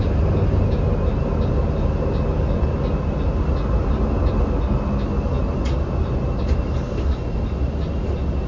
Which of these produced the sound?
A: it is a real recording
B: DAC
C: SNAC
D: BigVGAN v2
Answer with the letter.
A